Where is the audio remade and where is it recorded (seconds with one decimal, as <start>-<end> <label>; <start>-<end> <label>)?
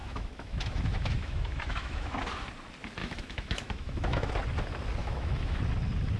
0.0-2.2 remade; 2.2-3.0 recorded; 3.0-4.3 remade; 4.3-5.0 recorded; 5.0-5.6 remade; 5.6-6.2 recorded